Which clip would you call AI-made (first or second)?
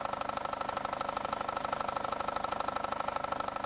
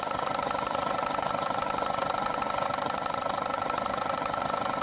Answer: second